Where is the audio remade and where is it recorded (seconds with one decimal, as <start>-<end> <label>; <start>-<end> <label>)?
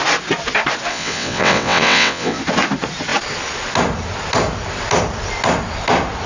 0.0-0.9 recorded; 0.9-2.4 remade; 2.4-6.3 recorded